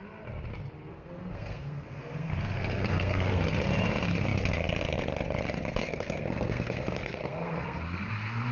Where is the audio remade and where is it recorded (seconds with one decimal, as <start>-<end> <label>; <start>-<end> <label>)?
0.0-0.9 recorded; 0.9-3.4 remade; 3.4-5.8 recorded; 5.8-8.1 remade; 8.1-8.5 recorded